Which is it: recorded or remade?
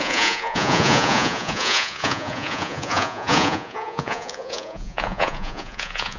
remade